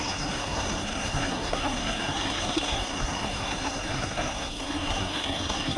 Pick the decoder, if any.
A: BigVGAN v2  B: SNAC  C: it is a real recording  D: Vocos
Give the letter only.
B